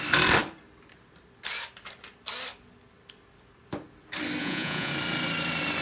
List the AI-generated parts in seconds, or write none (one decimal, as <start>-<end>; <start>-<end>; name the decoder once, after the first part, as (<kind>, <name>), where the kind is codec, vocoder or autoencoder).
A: 4.4-4.9 (vocoder, Vocos)